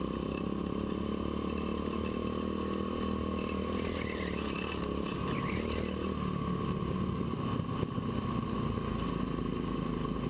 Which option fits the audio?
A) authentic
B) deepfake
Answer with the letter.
A